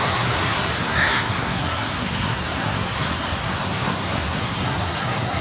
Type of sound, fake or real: fake